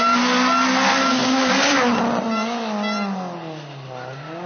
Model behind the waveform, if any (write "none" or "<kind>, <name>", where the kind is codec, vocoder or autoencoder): none